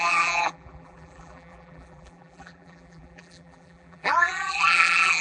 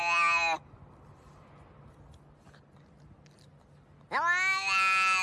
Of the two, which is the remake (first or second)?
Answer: first